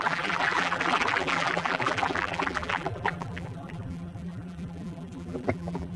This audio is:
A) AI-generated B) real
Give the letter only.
A